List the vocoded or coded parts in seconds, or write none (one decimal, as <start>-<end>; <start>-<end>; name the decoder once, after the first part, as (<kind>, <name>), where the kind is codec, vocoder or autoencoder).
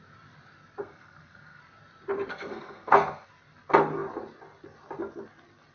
0.8-1.6 (codec, SNAC); 2.3-3.3